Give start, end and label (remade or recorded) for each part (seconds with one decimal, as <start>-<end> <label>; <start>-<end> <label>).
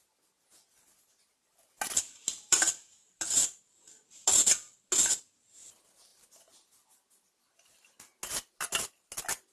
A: 0.0-9.5 recorded